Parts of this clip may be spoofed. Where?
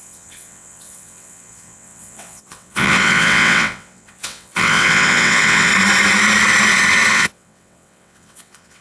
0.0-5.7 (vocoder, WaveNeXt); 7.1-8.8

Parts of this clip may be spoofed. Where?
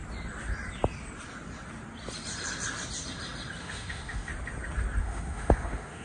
3.6-4.3 (autoencoder, DAC-VAE); 5.0-6.0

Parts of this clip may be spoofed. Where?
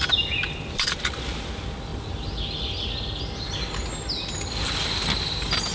none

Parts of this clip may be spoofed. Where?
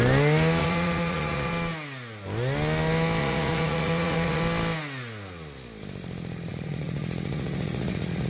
0.6-1.5 (vocoder, Vocos); 3.2-4.4; 6.5-8.3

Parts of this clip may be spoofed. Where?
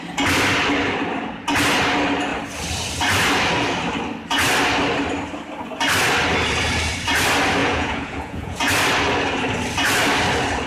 7.6-8.7 (vocoder, Vocos)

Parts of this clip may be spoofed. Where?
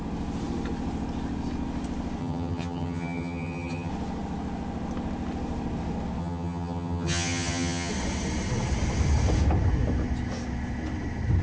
2.2-3.9 (vocoder, HiFi-GAN); 6.2-7.9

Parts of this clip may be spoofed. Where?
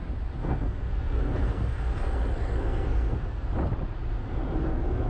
0.4-3.5 (codec, SNAC); 4.2-5.1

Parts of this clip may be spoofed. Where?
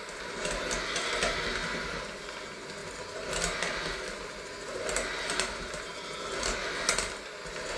none